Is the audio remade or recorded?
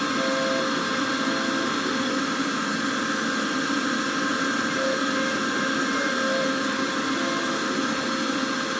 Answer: recorded